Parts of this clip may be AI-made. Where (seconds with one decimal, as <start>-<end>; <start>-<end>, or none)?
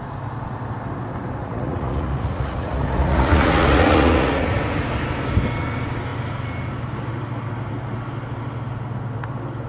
1.4-4.6